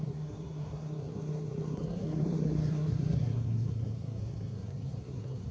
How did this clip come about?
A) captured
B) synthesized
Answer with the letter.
B